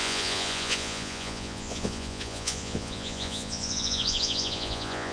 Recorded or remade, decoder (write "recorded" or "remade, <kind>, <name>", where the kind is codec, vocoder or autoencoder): remade, vocoder, Vocos